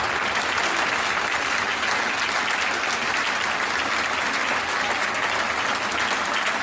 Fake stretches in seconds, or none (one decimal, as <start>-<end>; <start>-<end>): none